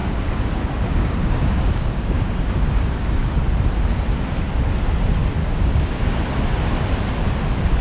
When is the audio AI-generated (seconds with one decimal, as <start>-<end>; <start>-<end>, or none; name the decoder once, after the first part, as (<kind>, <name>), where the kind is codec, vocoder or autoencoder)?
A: 0.0-3.3 (codec, DAC); 5.4-6.0